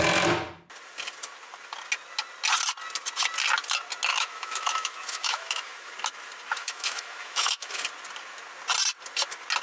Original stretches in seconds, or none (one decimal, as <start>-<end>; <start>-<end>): 0.0-4.1; 5.9-6.6; 7.8-9.6